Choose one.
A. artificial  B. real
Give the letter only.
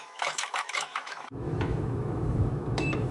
A